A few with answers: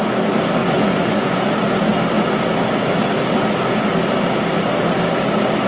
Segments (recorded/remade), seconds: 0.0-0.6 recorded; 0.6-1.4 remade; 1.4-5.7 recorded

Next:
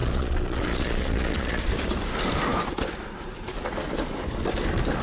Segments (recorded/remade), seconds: 0.0-1.7 remade; 1.7-5.0 recorded

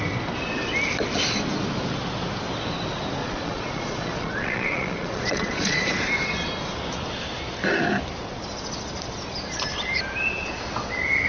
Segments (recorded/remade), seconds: 0.0-3.2 recorded; 3.2-5.9 remade; 5.9-11.3 recorded

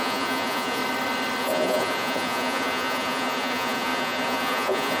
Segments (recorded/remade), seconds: 0.0-0.8 remade; 0.8-1.4 recorded; 1.4-5.0 remade

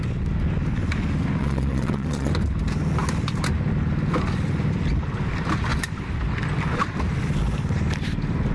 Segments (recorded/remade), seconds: 0.0-1.4 recorded; 1.4-2.3 remade; 2.3-8.5 recorded

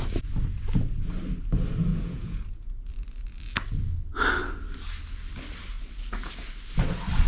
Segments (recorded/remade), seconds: 0.0-1.9 recorded; 1.9-2.9 remade; 2.9-7.3 recorded

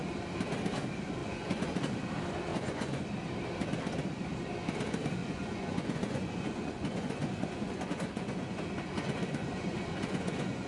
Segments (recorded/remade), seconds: 0.0-1.2 recorded; 1.2-1.8 remade; 1.8-2.5 recorded; 2.5-3.0 remade; 3.0-5.2 recorded; 5.2-10.7 remade

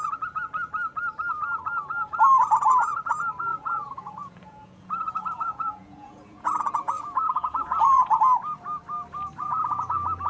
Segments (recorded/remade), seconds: 0.0-3.5 recorded; 3.5-8.2 remade; 8.2-10.3 recorded